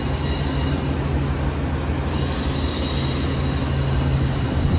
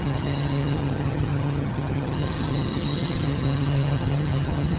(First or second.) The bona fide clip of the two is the first